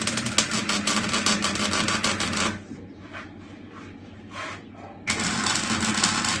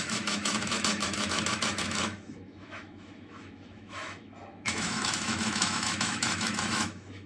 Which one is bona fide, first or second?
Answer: first